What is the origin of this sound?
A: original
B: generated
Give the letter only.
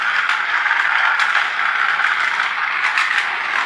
A